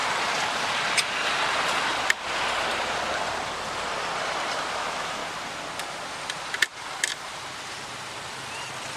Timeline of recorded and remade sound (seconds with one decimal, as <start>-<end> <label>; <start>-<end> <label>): 0.0-4.7 recorded; 4.7-5.2 remade; 5.2-9.0 recorded